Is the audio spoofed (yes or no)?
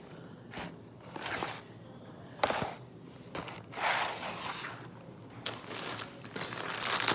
no